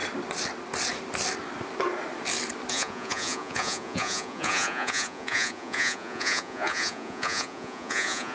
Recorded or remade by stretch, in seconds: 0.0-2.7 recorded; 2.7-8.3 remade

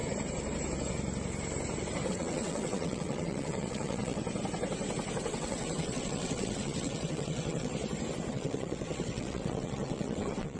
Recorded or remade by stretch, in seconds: 0.0-2.1 recorded; 2.1-4.2 remade; 4.2-5.3 recorded; 5.3-7.7 remade; 7.7-8.3 recorded; 8.3-10.6 remade